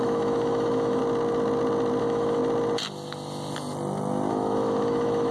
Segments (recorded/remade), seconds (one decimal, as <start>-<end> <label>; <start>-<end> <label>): 0.0-1.0 remade; 1.0-2.0 recorded; 2.0-2.4 remade; 2.4-4.3 recorded; 4.3-5.3 remade

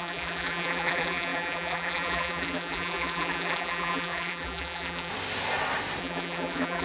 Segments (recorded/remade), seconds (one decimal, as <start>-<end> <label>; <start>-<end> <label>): 0.0-5.1 remade; 5.1-6.0 recorded; 6.0-6.8 remade